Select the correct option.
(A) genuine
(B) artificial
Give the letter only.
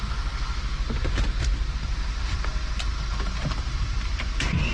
A